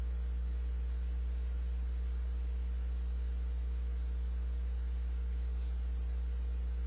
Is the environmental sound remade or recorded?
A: recorded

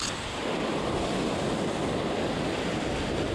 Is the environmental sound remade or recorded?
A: recorded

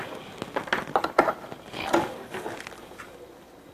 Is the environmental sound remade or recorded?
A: recorded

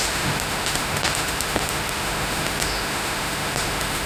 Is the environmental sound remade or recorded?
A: remade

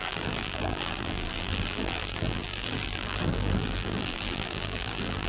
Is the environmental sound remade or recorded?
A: remade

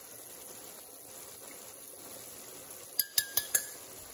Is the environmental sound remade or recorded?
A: recorded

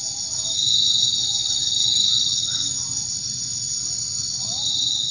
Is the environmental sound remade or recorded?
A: remade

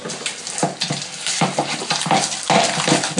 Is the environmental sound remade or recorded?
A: recorded